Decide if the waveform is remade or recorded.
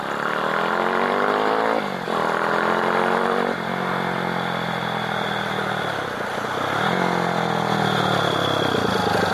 recorded